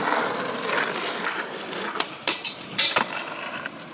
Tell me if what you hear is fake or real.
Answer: fake